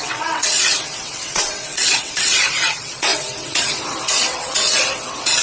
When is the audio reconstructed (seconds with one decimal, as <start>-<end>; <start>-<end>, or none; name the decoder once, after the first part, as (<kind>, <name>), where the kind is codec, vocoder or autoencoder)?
0.0-5.4 (vocoder, WaveNeXt)